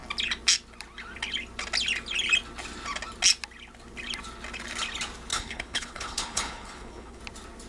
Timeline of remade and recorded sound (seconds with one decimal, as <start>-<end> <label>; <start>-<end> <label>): 0.0-5.3 recorded; 5.3-7.2 remade; 7.2-7.7 recorded